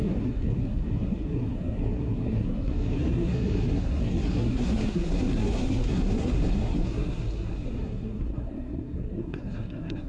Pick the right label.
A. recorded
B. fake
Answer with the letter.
B